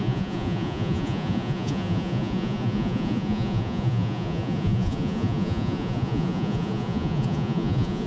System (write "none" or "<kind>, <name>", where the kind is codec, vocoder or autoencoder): vocoder, Vocos